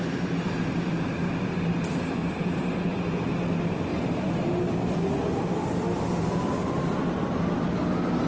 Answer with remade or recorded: recorded